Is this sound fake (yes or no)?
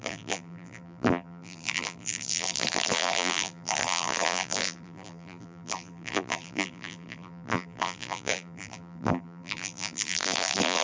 yes